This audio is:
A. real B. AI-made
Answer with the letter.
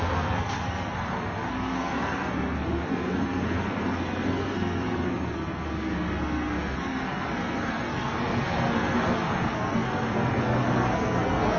B